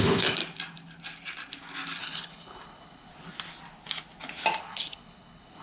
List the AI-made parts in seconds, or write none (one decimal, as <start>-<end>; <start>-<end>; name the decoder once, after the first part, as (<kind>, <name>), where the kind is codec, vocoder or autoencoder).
0.0-0.4 (codec, HILCodec); 2.0-3.1; 4.6-5.6